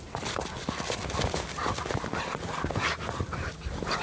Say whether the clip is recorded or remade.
recorded